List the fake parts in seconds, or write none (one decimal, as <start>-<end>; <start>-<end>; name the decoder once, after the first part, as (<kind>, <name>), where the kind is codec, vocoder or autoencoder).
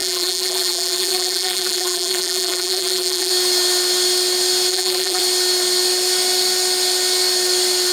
0.0-3.3 (vocoder, BigVGAN v2); 4.7-5.2